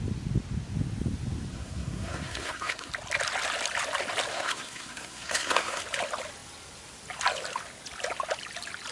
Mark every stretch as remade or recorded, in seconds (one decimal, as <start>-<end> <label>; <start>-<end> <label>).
0.0-1.5 recorded; 1.5-2.9 remade; 2.9-4.3 recorded; 4.3-5.8 remade; 5.8-8.9 recorded